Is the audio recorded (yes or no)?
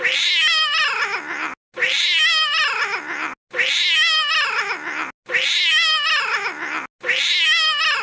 yes